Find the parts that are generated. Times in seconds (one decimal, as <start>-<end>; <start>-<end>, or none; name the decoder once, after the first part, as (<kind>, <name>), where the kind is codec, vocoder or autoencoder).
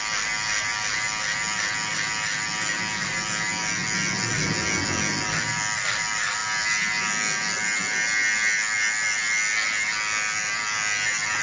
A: none